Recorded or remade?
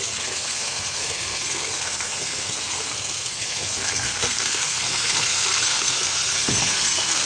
remade